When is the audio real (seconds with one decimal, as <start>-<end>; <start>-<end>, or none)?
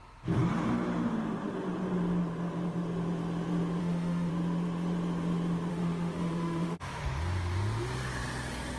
0.0-3.8; 4.3-5.7; 7.0-8.8